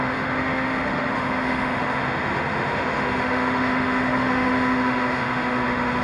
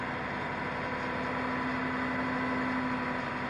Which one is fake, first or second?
first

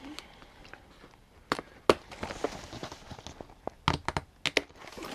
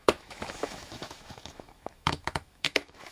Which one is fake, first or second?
second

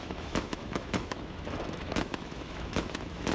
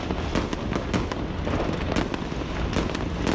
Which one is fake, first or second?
first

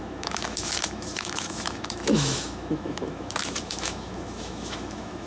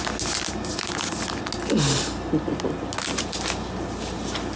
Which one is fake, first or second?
first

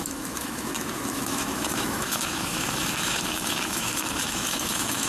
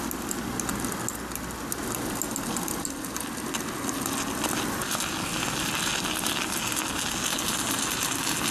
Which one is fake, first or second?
first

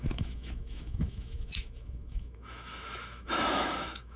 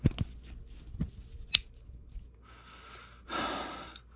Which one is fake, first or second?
first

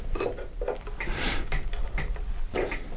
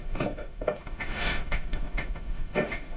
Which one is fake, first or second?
second